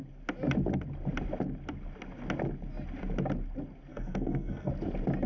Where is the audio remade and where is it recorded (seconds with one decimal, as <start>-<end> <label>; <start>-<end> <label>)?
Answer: 0.0-3.9 recorded; 3.9-4.7 remade; 4.7-5.3 recorded